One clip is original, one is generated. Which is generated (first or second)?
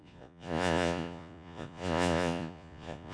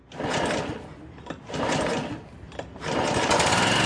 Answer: first